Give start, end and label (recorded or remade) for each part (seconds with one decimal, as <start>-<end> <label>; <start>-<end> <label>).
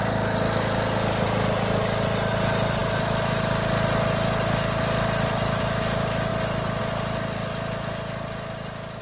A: 0.0-9.0 recorded